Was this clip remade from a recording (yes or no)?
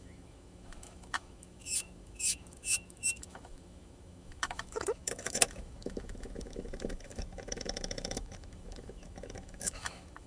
yes